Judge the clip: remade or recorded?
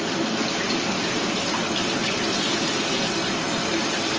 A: recorded